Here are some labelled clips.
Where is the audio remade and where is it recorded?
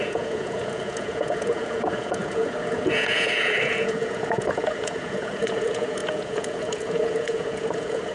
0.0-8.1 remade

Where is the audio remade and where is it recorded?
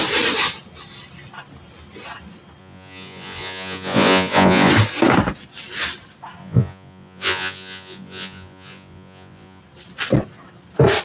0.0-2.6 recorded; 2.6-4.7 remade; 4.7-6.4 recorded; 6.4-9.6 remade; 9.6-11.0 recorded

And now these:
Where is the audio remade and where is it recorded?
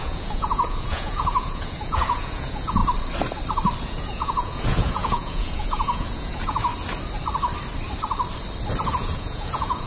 0.0-2.8 remade; 2.8-3.8 recorded; 3.8-6.7 remade; 6.7-8.9 recorded; 8.9-9.9 remade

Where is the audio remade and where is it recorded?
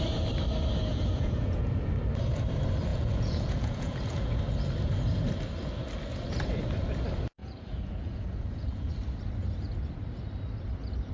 0.0-0.9 recorded; 0.9-1.7 remade; 1.7-2.9 recorded; 2.9-4.4 remade; 4.4-7.4 recorded; 7.4-8.9 remade; 8.9-11.1 recorded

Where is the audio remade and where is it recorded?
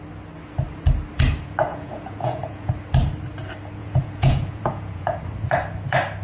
0.0-1.7 recorded; 1.7-2.7 remade; 2.7-3.8 recorded; 3.8-5.2 remade; 5.2-6.2 recorded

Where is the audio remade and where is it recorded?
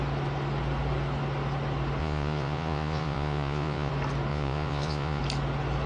0.0-2.0 recorded; 2.0-3.9 remade; 3.9-4.3 recorded; 4.3-5.2 remade; 5.2-5.9 recorded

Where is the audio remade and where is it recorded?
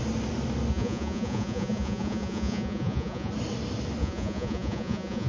0.0-0.7 recorded; 0.7-3.3 remade; 3.3-4.0 recorded; 4.0-5.3 remade